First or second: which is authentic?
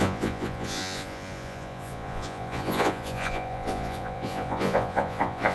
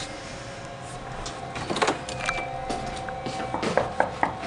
second